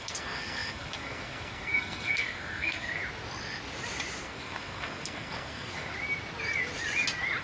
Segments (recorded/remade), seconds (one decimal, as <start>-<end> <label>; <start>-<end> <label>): 0.0-3.0 remade; 3.0-4.2 recorded; 4.2-5.9 remade; 5.9-7.4 recorded